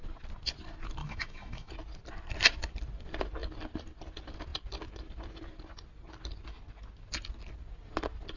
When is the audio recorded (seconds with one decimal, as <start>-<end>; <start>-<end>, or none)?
0.0-1.0; 1.7-8.4